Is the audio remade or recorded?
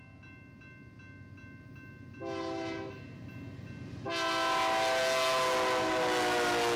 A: recorded